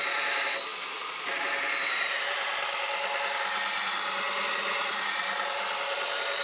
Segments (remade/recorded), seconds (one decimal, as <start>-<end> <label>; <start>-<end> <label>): 0.0-0.7 remade; 0.7-1.4 recorded; 1.4-2.5 remade; 2.5-6.4 recorded